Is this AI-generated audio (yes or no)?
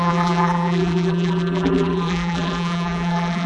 yes